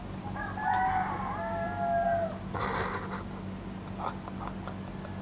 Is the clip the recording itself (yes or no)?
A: yes